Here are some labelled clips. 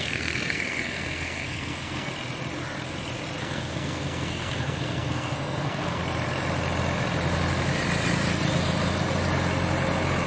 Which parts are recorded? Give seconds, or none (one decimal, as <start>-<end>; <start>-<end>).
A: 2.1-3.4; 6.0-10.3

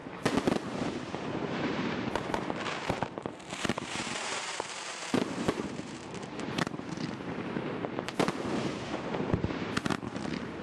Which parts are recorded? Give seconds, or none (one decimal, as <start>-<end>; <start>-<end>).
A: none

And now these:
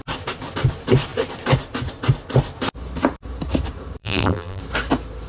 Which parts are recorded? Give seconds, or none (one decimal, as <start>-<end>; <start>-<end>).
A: 0.0-4.0; 4.6-5.3

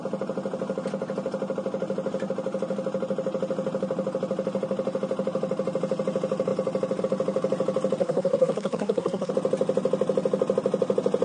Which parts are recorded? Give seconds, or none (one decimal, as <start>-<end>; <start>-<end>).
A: 0.0-8.0; 9.3-11.2

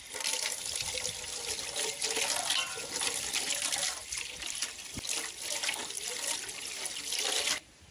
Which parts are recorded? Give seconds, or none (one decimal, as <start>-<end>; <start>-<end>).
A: 0.0-7.9